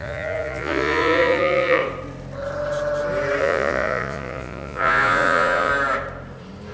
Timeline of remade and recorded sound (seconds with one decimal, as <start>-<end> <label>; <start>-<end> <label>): 0.0-1.8 remade; 1.8-3.4 recorded; 3.4-5.7 remade; 5.7-6.7 recorded